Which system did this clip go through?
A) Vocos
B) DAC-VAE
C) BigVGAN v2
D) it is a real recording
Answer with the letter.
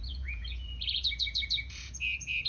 A